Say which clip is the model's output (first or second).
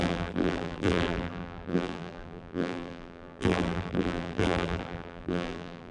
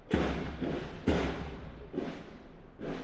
first